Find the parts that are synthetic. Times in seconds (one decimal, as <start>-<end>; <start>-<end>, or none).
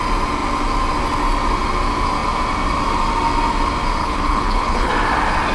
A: 4.0-4.9